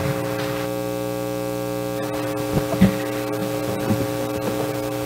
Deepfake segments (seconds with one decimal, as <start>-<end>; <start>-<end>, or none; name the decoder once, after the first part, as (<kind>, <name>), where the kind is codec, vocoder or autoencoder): none